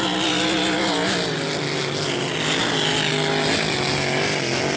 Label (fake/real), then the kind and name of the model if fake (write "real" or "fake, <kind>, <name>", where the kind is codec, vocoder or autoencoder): real